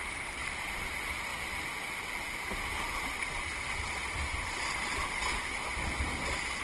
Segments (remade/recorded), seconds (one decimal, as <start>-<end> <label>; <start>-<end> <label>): 0.0-6.6 recorded